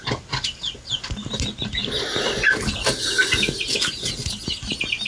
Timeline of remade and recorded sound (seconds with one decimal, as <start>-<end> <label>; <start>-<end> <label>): 0.0-5.1 recorded